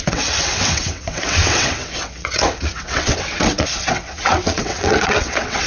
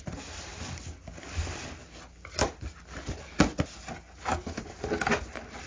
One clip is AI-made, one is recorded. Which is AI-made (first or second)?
first